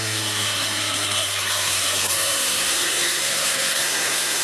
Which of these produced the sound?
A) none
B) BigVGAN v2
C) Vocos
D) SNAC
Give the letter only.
D